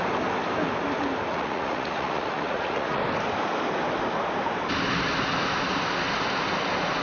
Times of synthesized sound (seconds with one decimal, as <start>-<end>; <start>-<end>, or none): 1.3-3.0